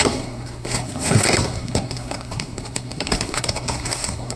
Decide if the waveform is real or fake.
fake